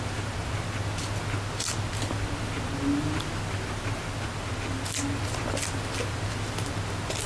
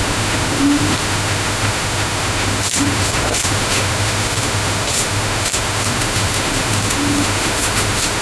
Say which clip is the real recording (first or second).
first